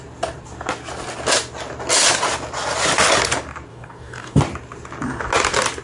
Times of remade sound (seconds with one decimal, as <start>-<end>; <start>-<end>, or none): 3.7-4.4